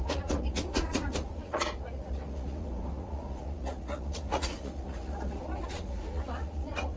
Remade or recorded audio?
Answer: remade